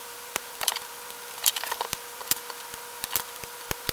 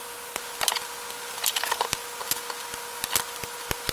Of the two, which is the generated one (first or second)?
first